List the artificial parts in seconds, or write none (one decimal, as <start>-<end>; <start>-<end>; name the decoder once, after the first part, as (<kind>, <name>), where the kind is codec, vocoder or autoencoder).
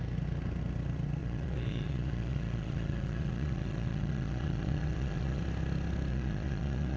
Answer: 1.2-5.4 (vocoder, Vocos); 6.1-7.0